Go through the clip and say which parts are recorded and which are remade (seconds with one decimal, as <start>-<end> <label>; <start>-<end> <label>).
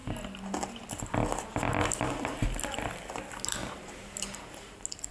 0.0-3.6 recorded; 3.6-4.4 remade; 4.4-5.1 recorded